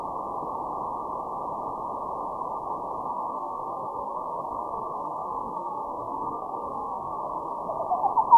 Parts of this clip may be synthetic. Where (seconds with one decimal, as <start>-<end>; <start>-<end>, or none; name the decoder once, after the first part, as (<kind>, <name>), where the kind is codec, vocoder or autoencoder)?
3.1-7.6 (codec, SNAC)